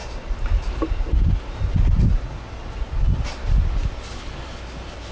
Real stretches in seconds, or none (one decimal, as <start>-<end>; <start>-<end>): 2.2-5.1